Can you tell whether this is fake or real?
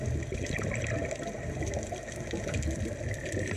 real